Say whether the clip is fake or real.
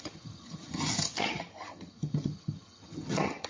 fake